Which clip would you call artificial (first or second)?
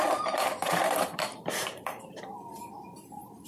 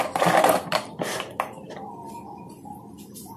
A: first